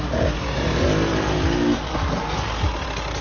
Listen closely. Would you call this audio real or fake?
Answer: real